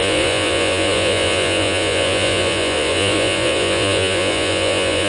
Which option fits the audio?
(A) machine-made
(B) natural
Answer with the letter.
A